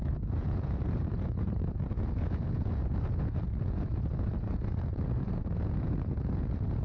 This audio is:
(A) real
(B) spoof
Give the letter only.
B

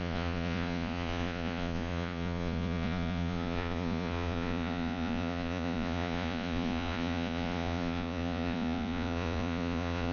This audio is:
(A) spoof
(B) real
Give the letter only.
A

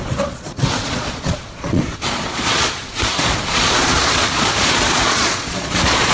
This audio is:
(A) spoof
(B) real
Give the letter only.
A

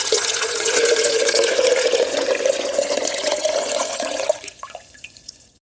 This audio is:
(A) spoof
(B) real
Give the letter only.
A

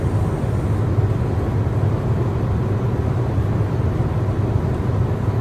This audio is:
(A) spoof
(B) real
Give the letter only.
B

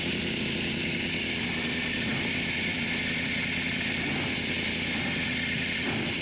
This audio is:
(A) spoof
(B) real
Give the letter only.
B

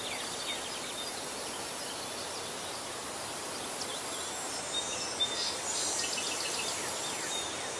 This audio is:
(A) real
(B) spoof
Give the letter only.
A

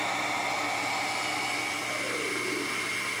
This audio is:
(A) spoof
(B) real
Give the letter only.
B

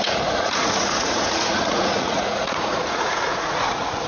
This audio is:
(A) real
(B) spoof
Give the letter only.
B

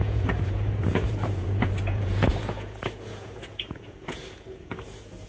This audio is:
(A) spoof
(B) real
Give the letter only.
A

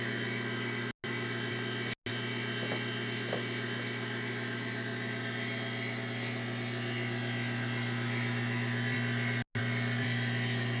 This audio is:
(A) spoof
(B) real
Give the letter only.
B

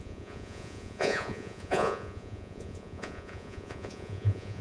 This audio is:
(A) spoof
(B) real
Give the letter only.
A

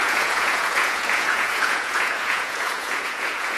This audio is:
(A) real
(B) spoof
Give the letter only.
B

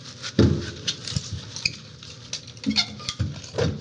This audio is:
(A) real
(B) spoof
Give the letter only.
A